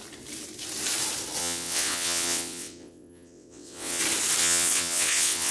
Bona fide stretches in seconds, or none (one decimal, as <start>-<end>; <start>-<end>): 0.0-1.4; 4.0-4.4